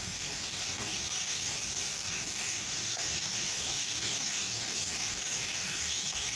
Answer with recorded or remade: remade